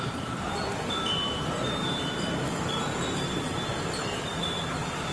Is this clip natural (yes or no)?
no